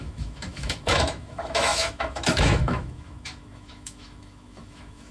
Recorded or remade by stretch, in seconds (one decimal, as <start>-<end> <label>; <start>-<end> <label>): 0.0-5.1 remade